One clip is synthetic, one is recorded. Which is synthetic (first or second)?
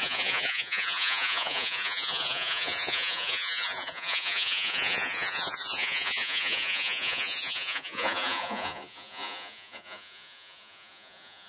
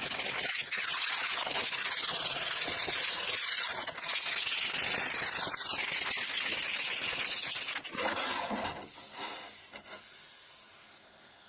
first